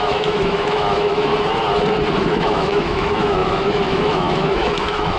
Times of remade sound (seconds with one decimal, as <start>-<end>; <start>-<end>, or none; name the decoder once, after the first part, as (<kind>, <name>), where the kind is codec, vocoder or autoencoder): 0.0-1.3 (autoencoder, DAC-VAE); 2.3-5.2